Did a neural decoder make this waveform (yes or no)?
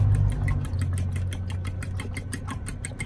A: no